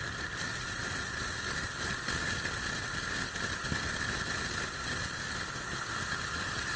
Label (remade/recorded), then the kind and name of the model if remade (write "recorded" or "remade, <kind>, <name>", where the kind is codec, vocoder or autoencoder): recorded